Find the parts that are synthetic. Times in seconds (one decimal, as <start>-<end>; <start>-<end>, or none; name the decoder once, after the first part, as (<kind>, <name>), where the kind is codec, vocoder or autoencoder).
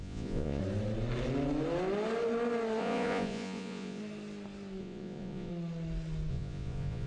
0.0-0.6 (vocoder, Vocos); 2.8-4.0; 4.8-5.5; 6.3-7.1